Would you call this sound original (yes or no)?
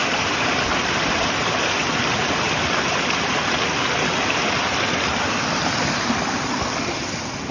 yes